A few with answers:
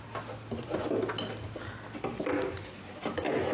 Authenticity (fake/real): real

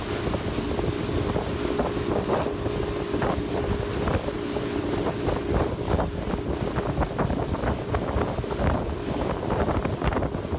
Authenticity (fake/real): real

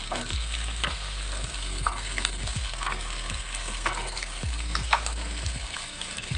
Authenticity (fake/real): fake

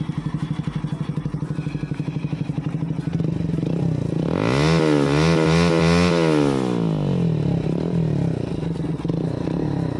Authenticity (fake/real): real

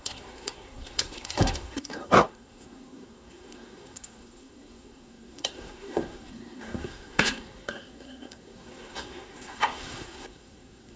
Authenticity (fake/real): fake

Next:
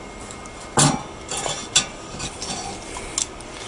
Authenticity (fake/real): real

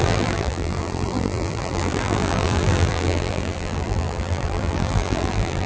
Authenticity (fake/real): fake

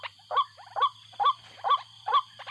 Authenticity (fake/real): real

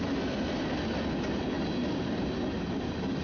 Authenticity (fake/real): real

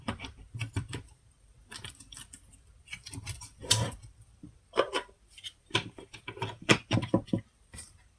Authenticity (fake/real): fake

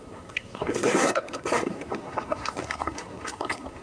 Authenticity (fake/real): fake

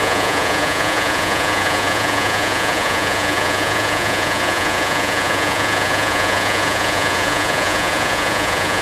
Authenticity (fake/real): fake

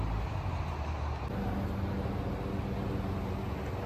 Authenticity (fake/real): real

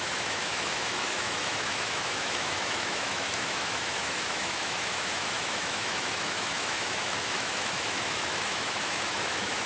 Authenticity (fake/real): fake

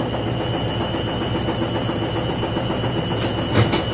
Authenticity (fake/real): real